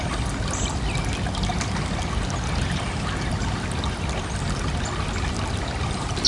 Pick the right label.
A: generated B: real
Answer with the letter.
B